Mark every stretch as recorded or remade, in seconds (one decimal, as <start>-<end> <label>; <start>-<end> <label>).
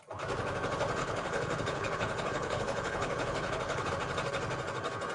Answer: 0.0-1.0 recorded; 1.0-3.9 remade; 3.9-5.1 recorded